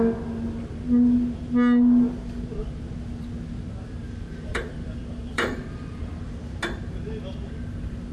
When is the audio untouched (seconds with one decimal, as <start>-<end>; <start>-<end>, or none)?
0.0-4.5; 6.1-8.1